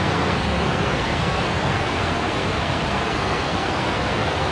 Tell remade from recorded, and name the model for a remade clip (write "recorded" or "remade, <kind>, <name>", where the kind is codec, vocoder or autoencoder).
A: remade, codec, SNAC